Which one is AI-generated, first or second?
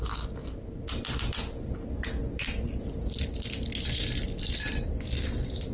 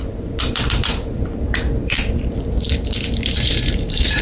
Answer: second